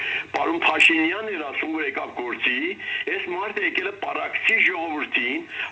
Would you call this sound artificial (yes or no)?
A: no